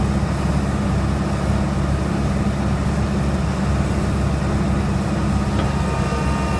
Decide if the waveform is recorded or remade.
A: recorded